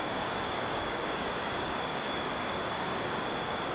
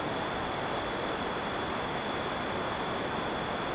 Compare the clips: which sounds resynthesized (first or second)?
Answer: first